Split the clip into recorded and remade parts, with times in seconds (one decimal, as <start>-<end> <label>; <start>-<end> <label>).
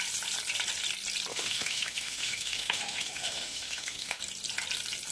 0.0-1.3 recorded; 1.3-4.2 remade; 4.2-5.1 recorded